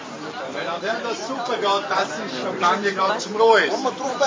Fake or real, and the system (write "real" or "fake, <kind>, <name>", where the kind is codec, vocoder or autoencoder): fake, vocoder, BigVGAN v2